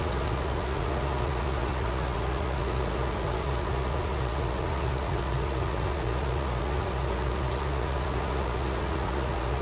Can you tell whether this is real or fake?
fake